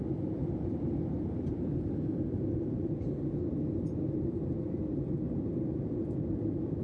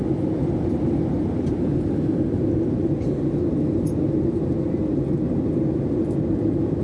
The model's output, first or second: first